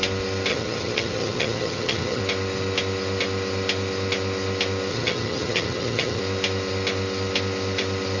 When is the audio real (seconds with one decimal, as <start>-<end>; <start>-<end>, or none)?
0.0-0.5; 2.2-4.9; 6.2-8.2